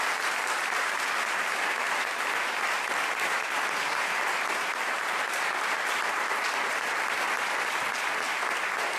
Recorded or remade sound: recorded